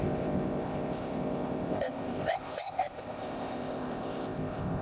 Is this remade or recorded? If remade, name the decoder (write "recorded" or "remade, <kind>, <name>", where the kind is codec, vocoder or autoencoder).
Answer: remade, codec, ZipCodec